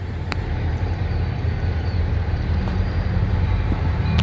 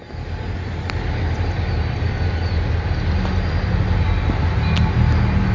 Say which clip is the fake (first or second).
first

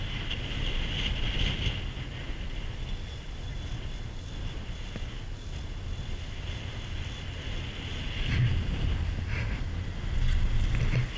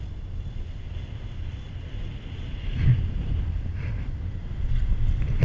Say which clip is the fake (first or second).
second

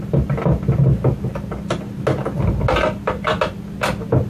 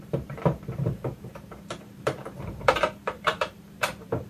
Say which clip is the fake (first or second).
second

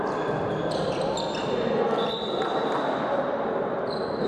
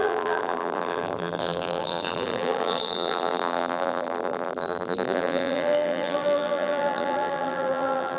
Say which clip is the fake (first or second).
second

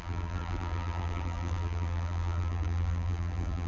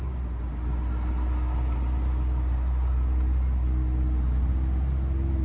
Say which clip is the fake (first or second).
first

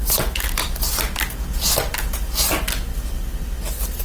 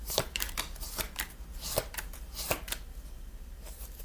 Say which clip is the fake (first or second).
second